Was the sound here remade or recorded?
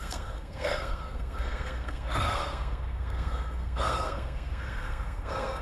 remade